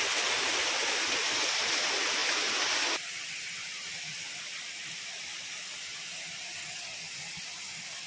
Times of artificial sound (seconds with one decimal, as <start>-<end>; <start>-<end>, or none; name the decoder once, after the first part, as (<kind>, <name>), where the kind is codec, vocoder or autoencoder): none